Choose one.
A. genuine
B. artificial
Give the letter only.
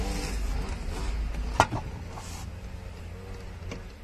A